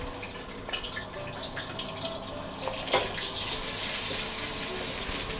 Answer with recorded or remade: recorded